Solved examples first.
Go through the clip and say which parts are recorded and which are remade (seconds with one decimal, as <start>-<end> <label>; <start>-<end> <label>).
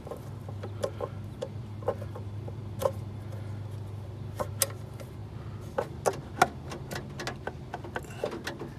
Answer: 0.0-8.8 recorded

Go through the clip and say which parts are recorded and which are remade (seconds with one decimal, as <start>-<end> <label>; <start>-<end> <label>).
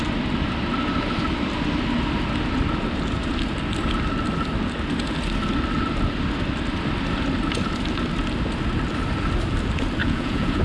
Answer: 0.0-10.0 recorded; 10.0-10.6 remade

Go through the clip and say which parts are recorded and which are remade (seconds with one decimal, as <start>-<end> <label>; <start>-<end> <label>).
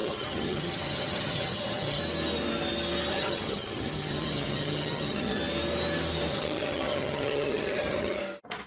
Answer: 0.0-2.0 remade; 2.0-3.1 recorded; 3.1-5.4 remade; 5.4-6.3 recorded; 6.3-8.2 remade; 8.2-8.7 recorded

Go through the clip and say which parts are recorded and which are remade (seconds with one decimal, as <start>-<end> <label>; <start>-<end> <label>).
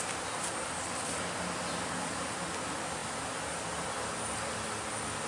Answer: 0.0-5.3 recorded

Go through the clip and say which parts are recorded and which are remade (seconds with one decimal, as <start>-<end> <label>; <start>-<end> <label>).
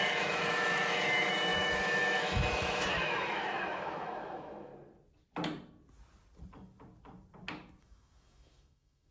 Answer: 0.0-4.7 remade; 4.7-7.8 recorded; 7.8-9.1 remade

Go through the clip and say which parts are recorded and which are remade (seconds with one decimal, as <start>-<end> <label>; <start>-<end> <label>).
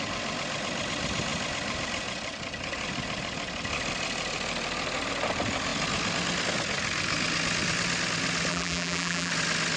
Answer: 0.0-8.5 recorded; 8.5-9.3 remade; 9.3-9.8 recorded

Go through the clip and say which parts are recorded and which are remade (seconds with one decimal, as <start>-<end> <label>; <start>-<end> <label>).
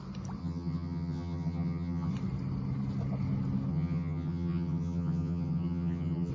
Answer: 0.0-0.4 recorded; 0.4-2.1 remade; 2.1-3.7 recorded; 3.7-6.3 remade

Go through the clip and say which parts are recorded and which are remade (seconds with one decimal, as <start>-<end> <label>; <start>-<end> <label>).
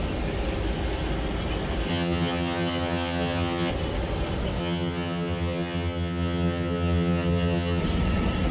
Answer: 0.0-1.9 recorded; 1.9-3.7 remade; 3.7-4.6 recorded; 4.6-7.8 remade; 7.8-8.5 recorded